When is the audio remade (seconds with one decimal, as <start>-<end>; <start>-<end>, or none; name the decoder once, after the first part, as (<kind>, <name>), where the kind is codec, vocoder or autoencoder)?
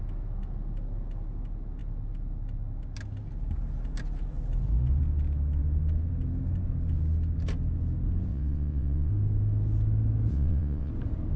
8.3-9.1 (vocoder, WaveNeXt); 10.3-10.9